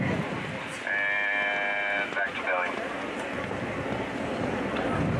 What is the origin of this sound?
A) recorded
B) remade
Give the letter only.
A